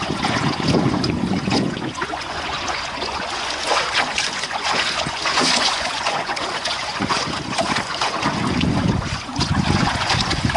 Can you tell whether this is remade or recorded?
remade